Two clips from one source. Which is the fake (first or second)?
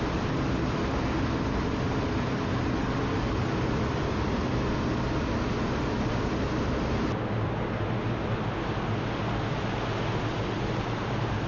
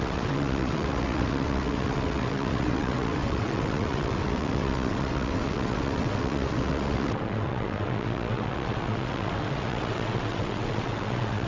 second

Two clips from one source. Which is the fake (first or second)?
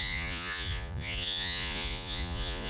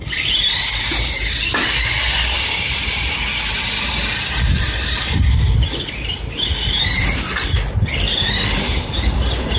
first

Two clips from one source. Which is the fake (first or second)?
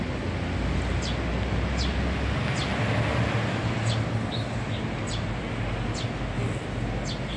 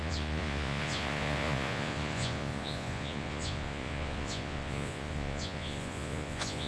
second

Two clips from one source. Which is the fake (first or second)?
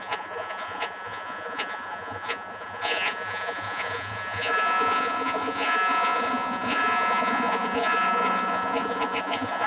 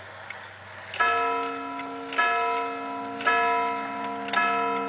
first